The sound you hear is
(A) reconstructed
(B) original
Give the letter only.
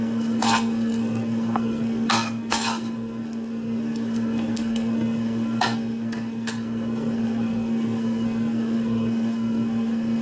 A